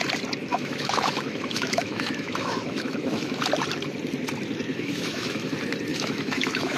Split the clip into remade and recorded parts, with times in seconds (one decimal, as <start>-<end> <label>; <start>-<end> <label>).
0.0-0.5 recorded; 0.5-3.4 remade; 3.4-4.7 recorded; 4.7-5.5 remade; 5.5-5.9 recorded; 5.9-6.8 remade